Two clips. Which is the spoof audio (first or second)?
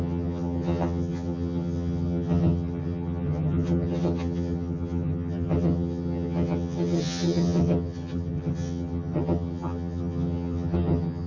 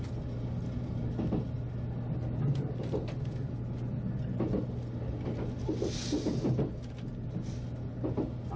first